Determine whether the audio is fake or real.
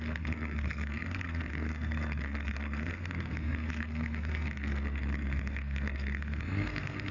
fake